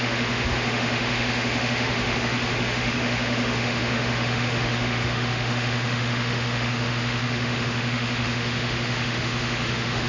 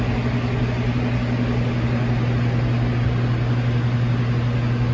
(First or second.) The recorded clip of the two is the second